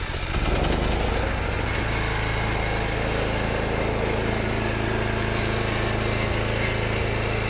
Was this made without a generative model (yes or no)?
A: yes